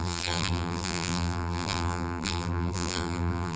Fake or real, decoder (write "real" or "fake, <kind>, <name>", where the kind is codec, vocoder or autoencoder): fake, vocoder, BigVGAN v2